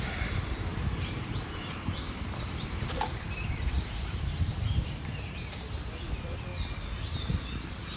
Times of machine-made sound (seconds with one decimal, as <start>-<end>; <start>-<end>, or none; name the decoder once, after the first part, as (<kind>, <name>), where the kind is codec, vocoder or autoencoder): 0.0-6.5 (vocoder, BigVGAN v2)

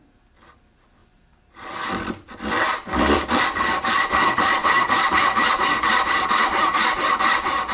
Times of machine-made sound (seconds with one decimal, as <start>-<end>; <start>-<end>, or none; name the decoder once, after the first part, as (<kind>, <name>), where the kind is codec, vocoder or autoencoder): 0.0-7.7 (vocoder, BigVGAN v2)

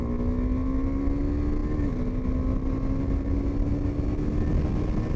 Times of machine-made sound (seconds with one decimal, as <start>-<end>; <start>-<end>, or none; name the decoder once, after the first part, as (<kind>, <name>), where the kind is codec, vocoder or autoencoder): none

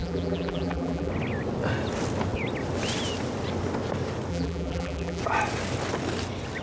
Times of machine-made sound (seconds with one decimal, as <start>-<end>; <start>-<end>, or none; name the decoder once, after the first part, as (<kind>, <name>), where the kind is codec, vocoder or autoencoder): 0.0-1.1 (vocoder, BigVGAN v2); 4.3-5.2

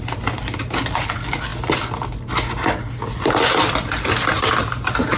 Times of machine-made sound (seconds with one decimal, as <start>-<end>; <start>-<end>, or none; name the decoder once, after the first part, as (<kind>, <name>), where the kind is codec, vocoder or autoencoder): none

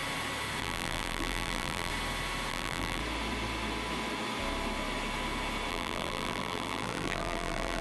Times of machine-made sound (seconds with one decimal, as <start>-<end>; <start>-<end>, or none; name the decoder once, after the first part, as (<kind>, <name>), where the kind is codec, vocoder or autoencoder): 0.6-1.9 (vocoder, BigVGAN v2); 2.5-3.0; 5.7-7.8

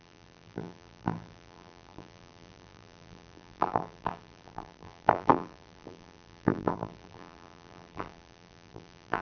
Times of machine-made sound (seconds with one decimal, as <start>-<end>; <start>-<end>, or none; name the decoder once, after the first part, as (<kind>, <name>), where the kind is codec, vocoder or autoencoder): 0.0-9.2 (vocoder, BigVGAN v2)